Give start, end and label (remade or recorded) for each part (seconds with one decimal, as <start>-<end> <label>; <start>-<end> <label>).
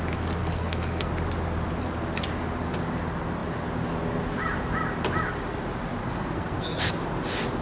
0.0-0.4 recorded; 0.4-1.1 remade; 1.1-6.0 recorded; 6.0-6.9 remade; 6.9-7.6 recorded